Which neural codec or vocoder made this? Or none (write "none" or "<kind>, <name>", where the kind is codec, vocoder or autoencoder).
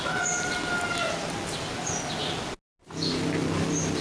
none